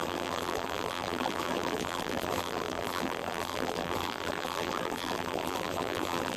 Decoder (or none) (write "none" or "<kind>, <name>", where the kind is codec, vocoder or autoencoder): vocoder, BigVGAN v2